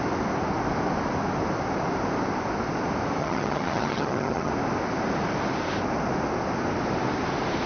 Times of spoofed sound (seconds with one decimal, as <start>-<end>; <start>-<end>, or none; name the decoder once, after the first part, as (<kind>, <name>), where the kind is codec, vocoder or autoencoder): 3.2-4.5 (vocoder, HiFi-GAN)